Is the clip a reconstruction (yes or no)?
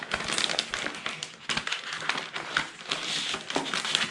no